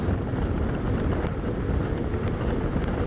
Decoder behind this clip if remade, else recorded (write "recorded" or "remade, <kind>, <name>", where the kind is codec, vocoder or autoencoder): recorded